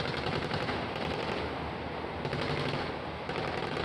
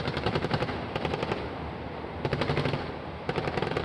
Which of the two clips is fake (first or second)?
second